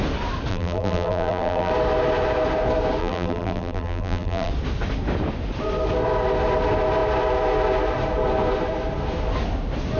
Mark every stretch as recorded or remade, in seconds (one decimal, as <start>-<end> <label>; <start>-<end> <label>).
0.0-0.5 recorded; 0.5-1.7 remade; 1.7-3.0 recorded; 3.0-4.5 remade; 4.5-10.0 recorded